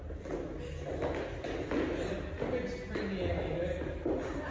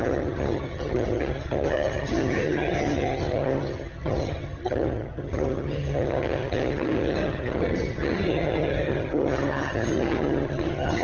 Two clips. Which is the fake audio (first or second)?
second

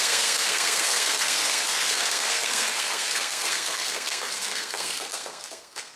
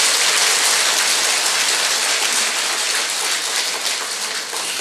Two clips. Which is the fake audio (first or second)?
first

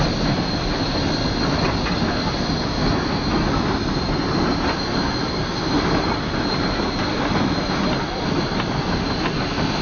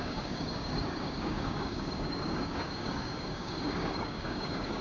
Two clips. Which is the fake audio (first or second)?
second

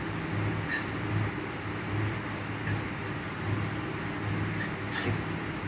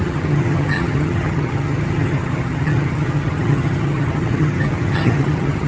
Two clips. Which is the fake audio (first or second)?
second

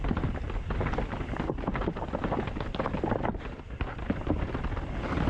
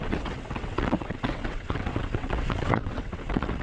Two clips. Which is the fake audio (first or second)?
second